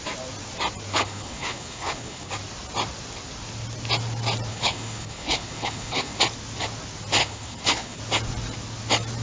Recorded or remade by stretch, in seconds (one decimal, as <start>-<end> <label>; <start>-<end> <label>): 0.0-0.9 recorded; 0.9-2.3 remade; 2.3-4.5 recorded; 4.5-6.2 remade; 6.2-7.2 recorded; 7.2-8.0 remade; 8.0-9.2 recorded

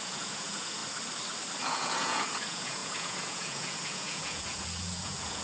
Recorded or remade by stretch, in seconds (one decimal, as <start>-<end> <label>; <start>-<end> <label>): 0.0-0.8 remade; 0.8-1.6 recorded; 1.6-5.4 remade